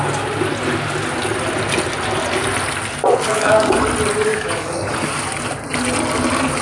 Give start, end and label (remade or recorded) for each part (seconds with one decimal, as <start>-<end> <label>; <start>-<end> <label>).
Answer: 0.0-3.3 recorded; 3.3-3.8 remade; 3.8-4.3 recorded; 4.3-4.9 remade; 4.9-6.6 recorded